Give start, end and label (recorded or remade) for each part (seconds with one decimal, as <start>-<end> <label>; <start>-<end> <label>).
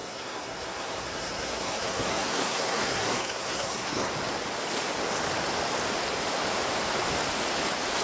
0.0-4.1 remade; 4.1-8.0 recorded